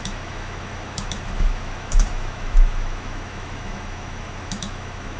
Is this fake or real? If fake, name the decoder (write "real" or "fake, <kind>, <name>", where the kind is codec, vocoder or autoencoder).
fake, autoencoder, DAC-VAE